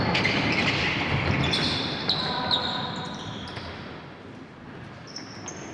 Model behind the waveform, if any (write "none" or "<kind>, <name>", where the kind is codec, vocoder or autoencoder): none